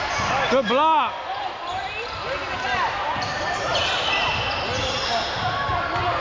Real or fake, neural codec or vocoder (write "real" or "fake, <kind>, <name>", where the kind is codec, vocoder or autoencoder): real